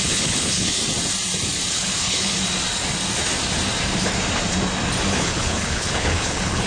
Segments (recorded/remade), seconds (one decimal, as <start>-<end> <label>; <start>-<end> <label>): 0.0-0.8 remade; 0.8-1.7 recorded; 1.7-2.4 remade; 2.4-5.1 recorded; 5.1-6.7 remade